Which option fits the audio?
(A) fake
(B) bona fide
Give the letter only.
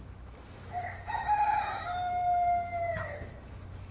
A